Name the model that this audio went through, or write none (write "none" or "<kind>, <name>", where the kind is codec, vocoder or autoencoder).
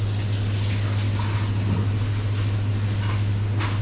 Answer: none